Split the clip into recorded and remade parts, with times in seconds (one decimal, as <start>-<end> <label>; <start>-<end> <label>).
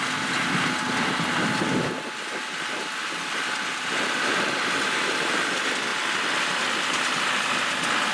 0.0-8.1 recorded